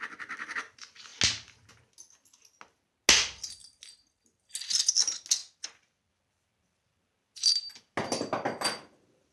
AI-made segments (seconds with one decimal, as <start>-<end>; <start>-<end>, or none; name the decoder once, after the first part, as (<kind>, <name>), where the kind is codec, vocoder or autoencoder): none